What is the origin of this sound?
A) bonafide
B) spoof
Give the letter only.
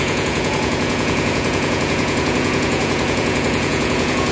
B